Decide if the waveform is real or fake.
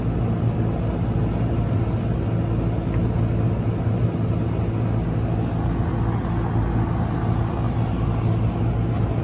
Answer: real